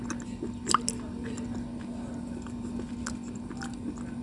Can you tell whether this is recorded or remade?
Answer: recorded